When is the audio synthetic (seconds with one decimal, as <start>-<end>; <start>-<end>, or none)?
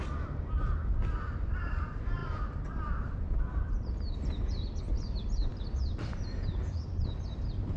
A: 2.2-4.8; 5.5-6.2